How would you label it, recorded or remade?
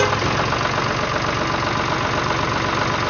recorded